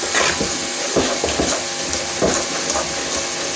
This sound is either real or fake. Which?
real